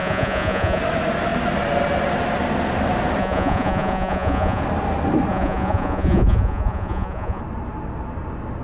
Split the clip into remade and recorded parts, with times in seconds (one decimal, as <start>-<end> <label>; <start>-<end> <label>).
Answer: 0.0-0.8 remade; 0.8-3.2 recorded; 3.2-4.6 remade; 4.6-5.3 recorded; 5.3-7.4 remade; 7.4-8.6 recorded